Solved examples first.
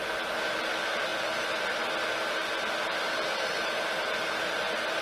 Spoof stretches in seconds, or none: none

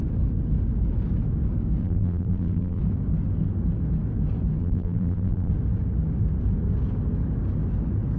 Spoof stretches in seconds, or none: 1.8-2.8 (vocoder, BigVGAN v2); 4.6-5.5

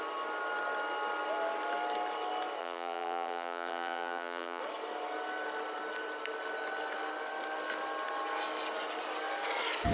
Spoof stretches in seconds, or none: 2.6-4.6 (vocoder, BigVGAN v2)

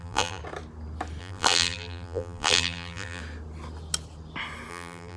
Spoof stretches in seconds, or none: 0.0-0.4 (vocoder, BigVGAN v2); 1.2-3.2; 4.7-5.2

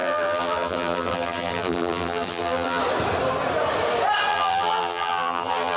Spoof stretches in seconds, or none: 0.0-2.8 (vocoder, BigVGAN v2); 4.3-5.8

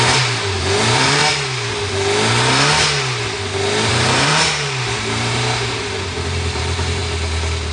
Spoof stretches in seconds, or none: 0.0-1.2 (vocoder, BigVGAN v2); 3.9-7.0

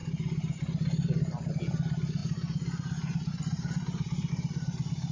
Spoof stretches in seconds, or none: 1.5-5.1 (vocoder, BigVGAN v2)